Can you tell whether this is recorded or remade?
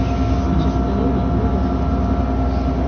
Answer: recorded